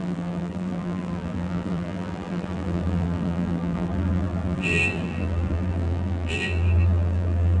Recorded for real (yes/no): no